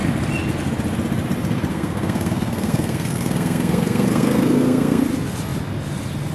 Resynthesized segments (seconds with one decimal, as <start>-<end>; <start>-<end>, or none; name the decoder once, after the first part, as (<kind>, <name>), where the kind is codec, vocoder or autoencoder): 1.7-5.0 (codec, SNAC)